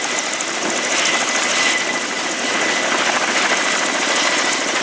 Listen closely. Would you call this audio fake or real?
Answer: real